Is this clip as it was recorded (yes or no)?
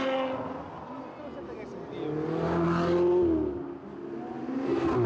yes